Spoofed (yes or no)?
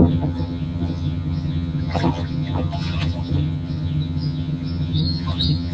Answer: yes